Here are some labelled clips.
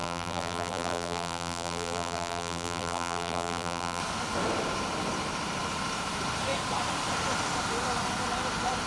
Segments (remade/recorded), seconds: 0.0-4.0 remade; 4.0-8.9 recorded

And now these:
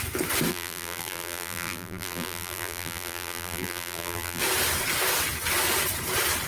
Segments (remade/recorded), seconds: 0.0-0.5 recorded; 0.5-4.4 remade; 4.4-6.5 recorded

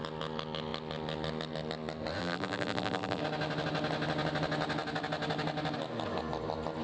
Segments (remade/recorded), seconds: 0.0-2.2 recorded; 2.2-3.2 remade; 3.2-6.8 recorded

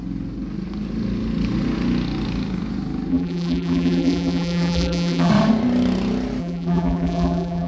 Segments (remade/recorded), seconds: 0.0-3.1 recorded; 3.1-5.3 remade; 5.3-6.4 recorded; 6.4-7.7 remade

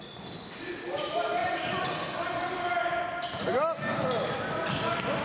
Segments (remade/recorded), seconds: 0.0-1.4 recorded; 1.4-2.9 remade; 2.9-5.2 recorded

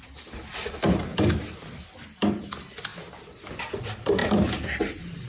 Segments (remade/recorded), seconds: 0.0-1.1 recorded; 1.1-1.8 remade; 1.8-4.2 recorded; 4.2-4.8 remade; 4.8-5.3 recorded

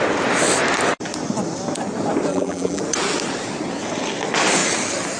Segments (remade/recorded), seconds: 0.0-2.3 recorded; 2.3-2.8 remade; 2.8-5.2 recorded